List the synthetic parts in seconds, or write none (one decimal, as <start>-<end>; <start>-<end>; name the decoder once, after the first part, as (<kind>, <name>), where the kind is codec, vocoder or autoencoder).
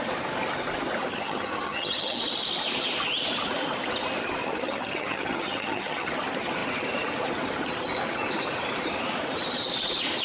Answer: 1.1-2.2 (vocoder, HiFi-GAN); 4.4-6.1